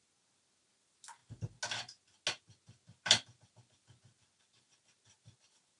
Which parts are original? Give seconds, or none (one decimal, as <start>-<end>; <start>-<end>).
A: 0.0-5.8